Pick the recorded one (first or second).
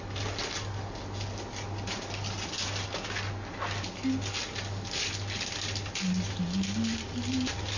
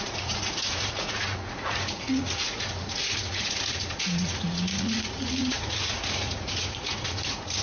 first